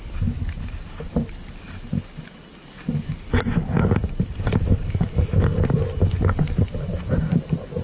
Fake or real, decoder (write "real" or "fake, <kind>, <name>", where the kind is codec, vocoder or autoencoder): real